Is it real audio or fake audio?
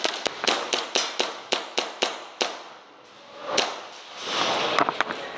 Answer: real